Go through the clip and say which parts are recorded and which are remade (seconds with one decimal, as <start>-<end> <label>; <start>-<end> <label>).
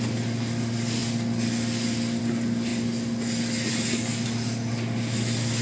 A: 0.0-5.6 recorded